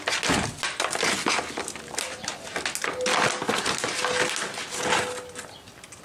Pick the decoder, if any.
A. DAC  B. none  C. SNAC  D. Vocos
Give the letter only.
B